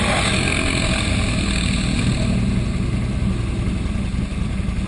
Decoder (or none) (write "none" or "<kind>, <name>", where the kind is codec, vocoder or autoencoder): none